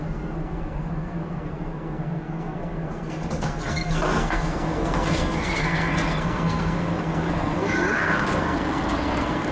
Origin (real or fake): fake